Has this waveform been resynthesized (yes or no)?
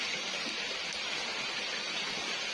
no